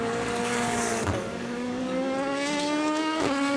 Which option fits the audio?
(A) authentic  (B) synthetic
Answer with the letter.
B